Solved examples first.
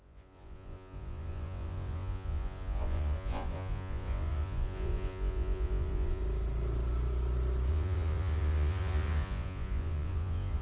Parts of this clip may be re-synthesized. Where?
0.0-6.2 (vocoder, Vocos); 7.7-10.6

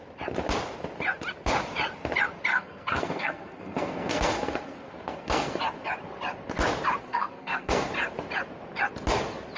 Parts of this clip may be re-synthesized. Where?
2.5-5.6 (codec, SNAC); 7.0-7.9

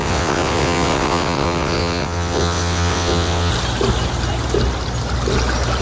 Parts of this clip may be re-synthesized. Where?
0.0-3.5 (vocoder, WaveNeXt)

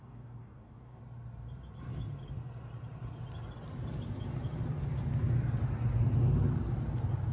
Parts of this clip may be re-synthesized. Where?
0.0-1.0 (codec, DAC)

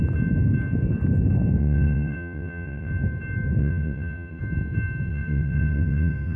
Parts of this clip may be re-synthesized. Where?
1.6-2.9 (vocoder, WaveNeXt); 3.6-4.4; 5.1-6.4